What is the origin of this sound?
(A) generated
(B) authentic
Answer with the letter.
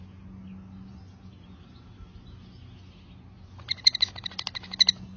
B